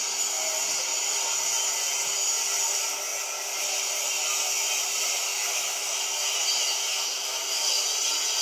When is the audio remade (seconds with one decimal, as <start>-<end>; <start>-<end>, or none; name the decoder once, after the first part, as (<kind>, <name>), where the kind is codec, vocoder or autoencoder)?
5.3-6.0 (autoencoder, DAC-VAE); 6.6-7.7